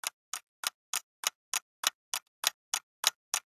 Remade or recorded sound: recorded